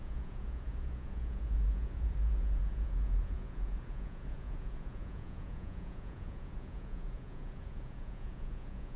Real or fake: fake